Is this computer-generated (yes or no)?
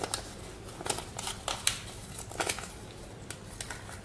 no